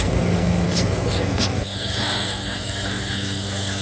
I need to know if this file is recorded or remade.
remade